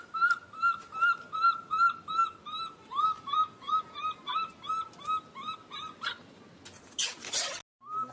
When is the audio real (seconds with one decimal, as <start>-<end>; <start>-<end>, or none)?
0.0-8.1